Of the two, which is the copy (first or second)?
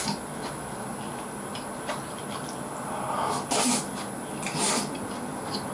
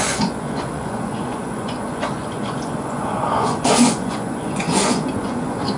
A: second